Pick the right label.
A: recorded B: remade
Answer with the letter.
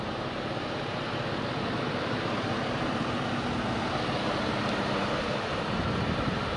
B